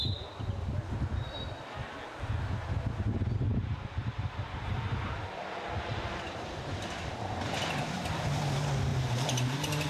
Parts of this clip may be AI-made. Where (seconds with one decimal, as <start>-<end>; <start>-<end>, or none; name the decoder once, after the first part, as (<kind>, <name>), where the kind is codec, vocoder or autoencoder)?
3.5-5.4 (vocoder, BigVGAN v2); 5.9-6.6; 8.9-9.9